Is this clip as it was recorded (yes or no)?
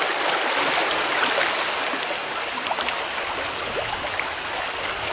yes